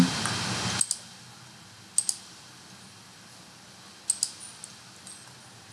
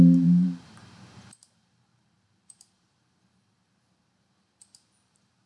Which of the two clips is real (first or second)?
first